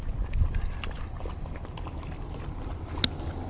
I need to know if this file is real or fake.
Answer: real